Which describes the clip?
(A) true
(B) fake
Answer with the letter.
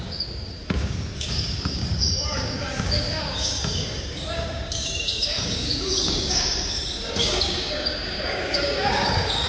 B